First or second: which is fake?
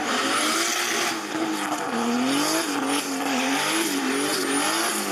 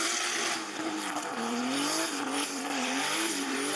second